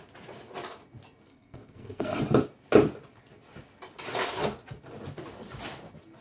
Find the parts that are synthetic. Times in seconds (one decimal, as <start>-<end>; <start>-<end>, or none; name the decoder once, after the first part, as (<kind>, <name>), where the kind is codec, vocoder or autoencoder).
1.3-2.2 (codec, SNAC)